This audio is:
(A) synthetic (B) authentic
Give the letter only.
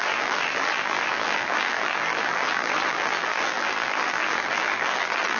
A